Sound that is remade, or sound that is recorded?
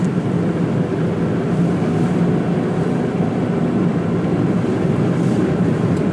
recorded